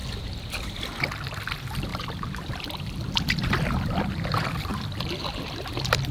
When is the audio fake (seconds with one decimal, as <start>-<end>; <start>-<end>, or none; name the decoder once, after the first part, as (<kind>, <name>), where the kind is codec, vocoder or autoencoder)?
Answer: 1.3-1.9 (vocoder, BigVGAN v2); 2.4-4.7